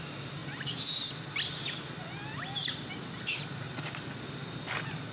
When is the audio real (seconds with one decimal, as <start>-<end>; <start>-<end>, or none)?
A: 0.0-5.1